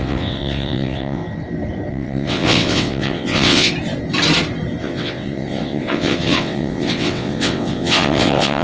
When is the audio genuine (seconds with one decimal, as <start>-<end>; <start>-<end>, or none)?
1.2-1.9; 3.7-4.8